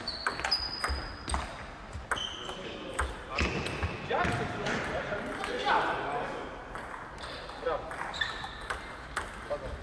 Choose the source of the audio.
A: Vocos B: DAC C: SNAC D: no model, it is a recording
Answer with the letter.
D